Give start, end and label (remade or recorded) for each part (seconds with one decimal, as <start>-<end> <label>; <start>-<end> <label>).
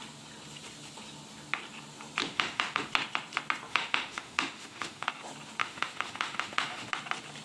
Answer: 0.0-2.2 recorded; 2.2-2.9 remade; 2.9-3.7 recorded; 3.7-5.1 remade; 5.1-5.6 recorded; 5.6-6.9 remade; 6.9-7.4 recorded